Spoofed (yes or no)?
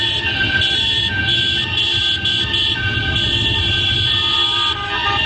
no